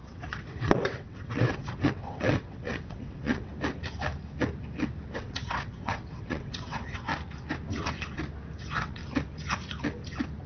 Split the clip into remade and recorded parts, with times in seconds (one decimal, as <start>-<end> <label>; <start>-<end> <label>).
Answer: 0.0-3.5 remade; 3.5-5.2 recorded; 5.2-7.1 remade; 7.1-8.6 recorded; 8.6-9.0 remade; 9.0-10.5 recorded